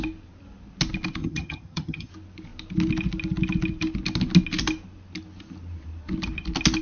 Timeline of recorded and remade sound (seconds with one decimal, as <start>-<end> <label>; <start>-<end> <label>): 0.0-1.2 recorded; 1.2-2.1 remade; 2.1-6.8 recorded